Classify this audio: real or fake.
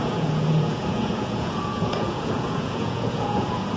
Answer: fake